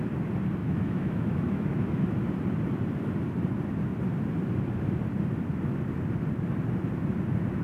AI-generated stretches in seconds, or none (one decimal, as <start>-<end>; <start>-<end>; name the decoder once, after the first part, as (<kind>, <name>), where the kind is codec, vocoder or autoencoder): 0.6-1.9 (autoencoder, DAC-VAE)